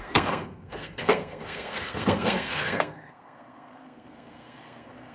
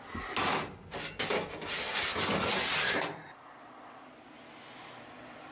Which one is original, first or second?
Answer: second